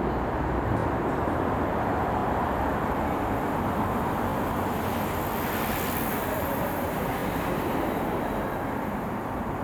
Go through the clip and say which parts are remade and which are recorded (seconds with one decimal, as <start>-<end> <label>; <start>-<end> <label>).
0.0-4.3 remade; 4.3-6.4 recorded; 6.4-9.6 remade